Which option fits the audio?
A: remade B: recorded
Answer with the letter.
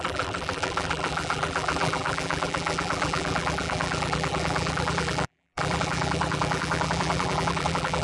A